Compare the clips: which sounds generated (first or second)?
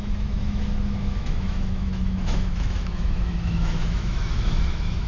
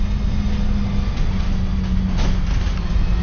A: first